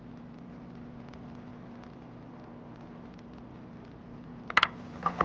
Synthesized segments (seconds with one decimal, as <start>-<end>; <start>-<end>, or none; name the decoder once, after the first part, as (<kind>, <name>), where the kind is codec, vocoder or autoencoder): none